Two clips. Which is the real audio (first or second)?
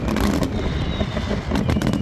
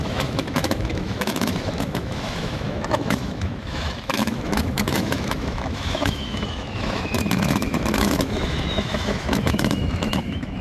first